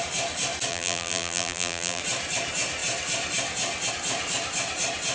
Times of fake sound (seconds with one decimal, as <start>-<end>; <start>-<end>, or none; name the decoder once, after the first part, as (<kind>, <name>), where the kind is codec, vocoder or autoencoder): 0.7-2.0 (vocoder, BigVGAN v2)